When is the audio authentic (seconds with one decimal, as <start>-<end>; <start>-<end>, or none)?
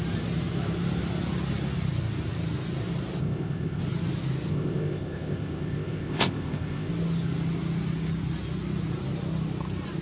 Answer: 0.0-3.2; 3.8-4.5; 6.9-10.0